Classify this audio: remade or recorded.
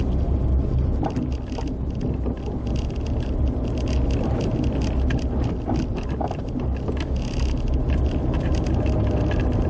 recorded